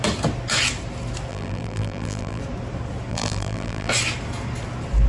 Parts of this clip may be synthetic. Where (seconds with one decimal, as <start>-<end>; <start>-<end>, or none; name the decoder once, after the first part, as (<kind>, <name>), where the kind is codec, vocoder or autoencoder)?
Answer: 1.3-2.4 (vocoder, BigVGAN v2); 3.1-3.9